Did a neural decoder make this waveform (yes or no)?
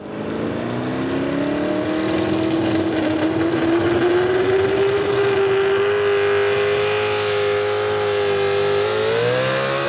no